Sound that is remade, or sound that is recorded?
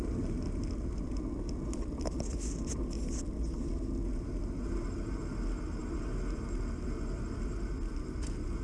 recorded